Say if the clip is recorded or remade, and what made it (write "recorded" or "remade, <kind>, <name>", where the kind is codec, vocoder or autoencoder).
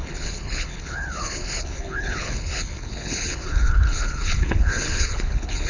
remade, codec, HILCodec